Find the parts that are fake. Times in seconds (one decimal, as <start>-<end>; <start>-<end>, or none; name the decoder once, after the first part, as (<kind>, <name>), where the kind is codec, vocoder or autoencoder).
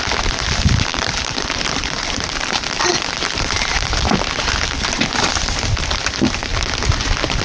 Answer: 0.9-5.0 (vocoder, BigVGAN v2)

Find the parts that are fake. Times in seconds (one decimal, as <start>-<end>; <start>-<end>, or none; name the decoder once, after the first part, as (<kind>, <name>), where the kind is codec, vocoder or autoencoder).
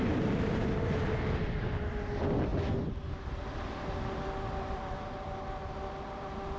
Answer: none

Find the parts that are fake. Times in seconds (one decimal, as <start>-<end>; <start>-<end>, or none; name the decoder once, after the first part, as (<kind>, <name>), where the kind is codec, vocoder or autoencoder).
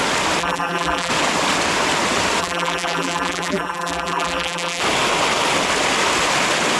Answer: 0.4-1.1 (vocoder, BigVGAN v2); 2.4-4.8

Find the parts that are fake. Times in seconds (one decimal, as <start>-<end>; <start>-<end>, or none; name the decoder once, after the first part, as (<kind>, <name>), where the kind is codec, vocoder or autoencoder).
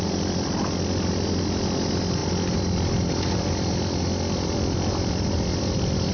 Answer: none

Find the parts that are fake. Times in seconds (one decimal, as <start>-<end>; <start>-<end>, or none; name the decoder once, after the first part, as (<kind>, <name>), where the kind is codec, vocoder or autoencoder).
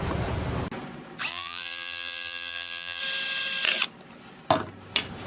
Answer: 1.3-3.0 (vocoder, BigVGAN v2)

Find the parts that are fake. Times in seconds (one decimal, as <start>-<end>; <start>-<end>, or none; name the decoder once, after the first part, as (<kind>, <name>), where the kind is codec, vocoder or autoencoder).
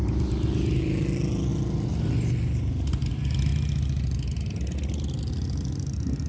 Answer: none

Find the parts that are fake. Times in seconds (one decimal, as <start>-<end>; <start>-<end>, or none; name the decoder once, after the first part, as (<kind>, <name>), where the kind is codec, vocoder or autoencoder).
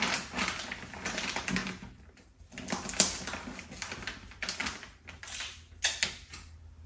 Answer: none